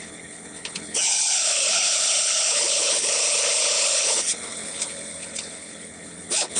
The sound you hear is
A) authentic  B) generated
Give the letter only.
B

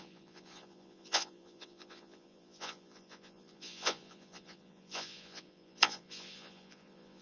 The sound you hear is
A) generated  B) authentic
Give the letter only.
A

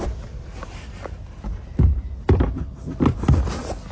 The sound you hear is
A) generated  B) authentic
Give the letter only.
B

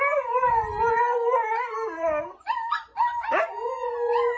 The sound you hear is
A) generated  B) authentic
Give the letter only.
B